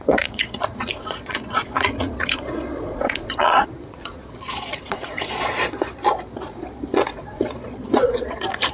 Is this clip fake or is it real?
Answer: fake